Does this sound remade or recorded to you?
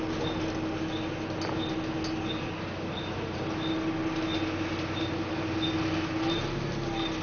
recorded